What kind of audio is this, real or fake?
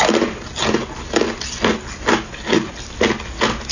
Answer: real